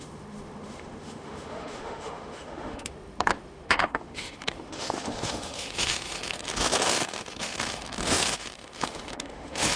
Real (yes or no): no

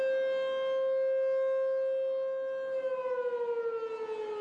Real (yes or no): yes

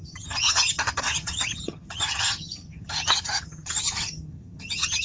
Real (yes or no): no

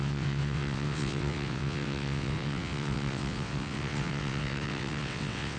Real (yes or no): no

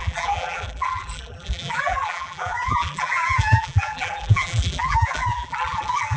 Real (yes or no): no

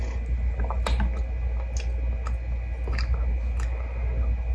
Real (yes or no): yes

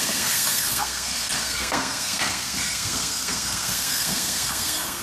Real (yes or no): no